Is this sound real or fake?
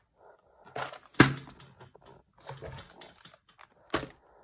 real